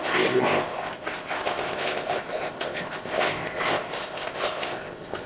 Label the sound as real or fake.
fake